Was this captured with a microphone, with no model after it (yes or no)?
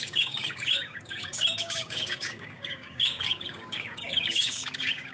no